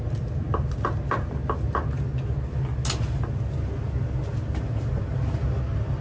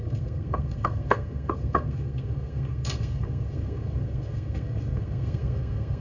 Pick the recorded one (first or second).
first